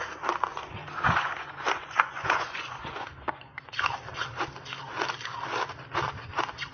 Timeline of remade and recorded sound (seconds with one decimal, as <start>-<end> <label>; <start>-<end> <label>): 0.0-0.5 recorded; 0.5-3.7 remade; 3.7-6.7 recorded